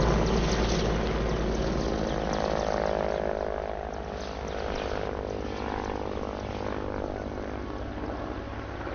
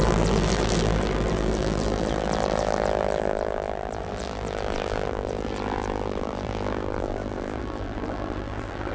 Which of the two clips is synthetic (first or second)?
second